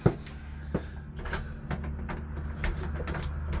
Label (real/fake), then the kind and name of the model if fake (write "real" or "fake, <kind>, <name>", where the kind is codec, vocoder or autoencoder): real